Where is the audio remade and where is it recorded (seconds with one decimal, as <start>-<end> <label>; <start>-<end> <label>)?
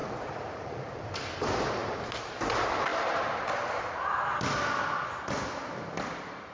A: 0.0-0.8 remade; 0.8-6.5 recorded